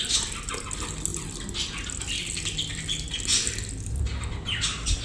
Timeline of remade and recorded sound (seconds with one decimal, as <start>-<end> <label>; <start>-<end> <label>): 0.0-5.0 recorded

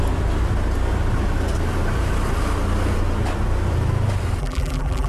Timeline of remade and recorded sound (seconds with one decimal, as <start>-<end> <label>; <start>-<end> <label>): 0.0-4.4 recorded; 4.4-5.1 remade

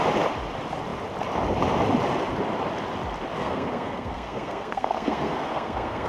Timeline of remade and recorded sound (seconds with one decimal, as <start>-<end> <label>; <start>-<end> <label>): 0.0-3.4 recorded; 3.4-6.1 remade